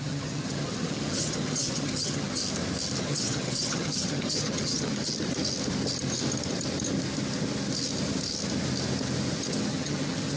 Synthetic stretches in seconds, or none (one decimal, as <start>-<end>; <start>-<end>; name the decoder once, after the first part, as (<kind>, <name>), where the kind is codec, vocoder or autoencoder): 0.0-2.4 (vocoder, HiFi-GAN); 3.0-4.9; 9.5-10.4